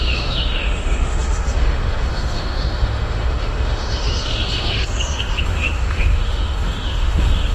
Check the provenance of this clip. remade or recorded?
remade